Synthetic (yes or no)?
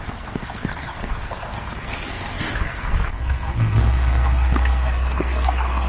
yes